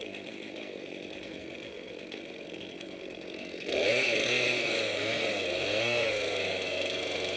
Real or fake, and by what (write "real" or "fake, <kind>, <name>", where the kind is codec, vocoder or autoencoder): fake, codec, SNAC